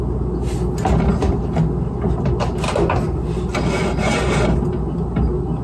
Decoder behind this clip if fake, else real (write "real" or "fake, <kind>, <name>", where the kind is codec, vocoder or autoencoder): real